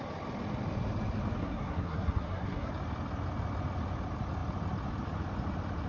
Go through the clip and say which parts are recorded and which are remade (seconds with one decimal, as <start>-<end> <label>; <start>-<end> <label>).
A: 0.0-1.4 recorded; 1.4-2.7 remade; 2.7-5.9 recorded